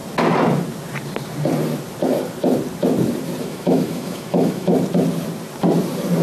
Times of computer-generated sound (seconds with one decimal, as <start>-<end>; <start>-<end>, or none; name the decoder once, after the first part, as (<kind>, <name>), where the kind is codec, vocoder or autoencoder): 3.4-4.7 (autoencoder, DAC-VAE)